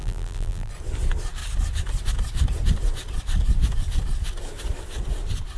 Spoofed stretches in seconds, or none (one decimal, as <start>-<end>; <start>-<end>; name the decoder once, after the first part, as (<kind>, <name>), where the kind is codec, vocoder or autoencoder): 0.0-0.7 (vocoder, BigVGAN v2)